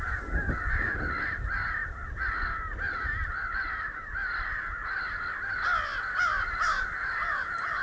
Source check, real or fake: real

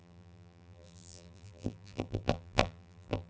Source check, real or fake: fake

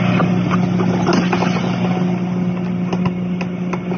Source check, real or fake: real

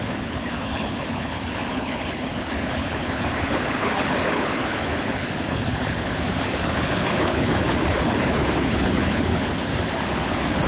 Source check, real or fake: fake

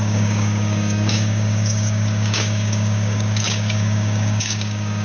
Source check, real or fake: fake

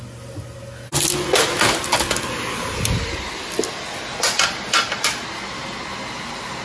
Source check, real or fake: real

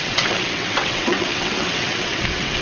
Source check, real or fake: fake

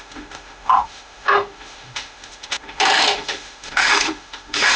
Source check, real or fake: fake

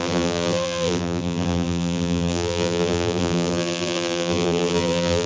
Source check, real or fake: fake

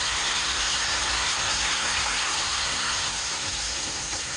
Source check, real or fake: fake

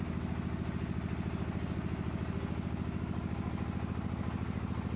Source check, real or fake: real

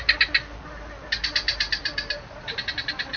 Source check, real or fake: real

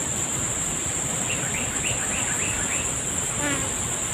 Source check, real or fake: real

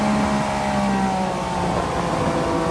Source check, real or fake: real